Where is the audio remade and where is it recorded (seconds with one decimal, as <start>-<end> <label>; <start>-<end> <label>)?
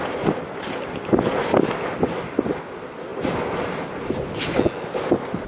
0.0-5.5 recorded